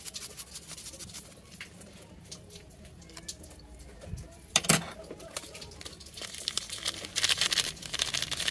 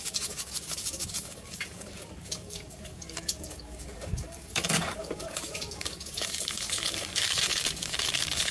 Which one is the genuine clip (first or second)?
first